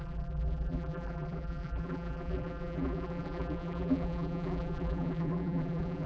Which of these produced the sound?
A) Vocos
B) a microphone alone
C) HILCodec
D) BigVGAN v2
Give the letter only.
D